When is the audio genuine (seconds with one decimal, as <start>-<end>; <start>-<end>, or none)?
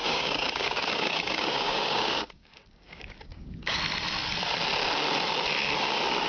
3.8-6.3